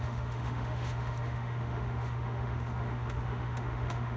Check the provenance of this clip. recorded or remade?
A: remade